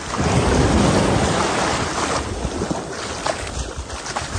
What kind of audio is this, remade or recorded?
recorded